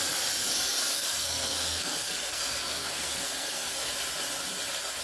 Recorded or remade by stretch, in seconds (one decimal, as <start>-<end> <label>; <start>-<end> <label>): 0.0-0.9 recorded; 0.9-3.9 remade; 3.9-5.0 recorded